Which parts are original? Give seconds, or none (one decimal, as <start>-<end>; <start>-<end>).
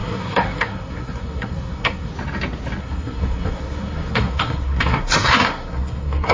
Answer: 2.1-2.8